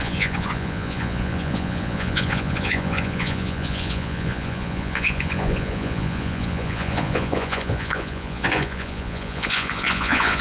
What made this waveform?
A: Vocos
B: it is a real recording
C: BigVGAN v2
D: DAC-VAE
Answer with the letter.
A